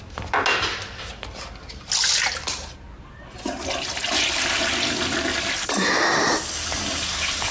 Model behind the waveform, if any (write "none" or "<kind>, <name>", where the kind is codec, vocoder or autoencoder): none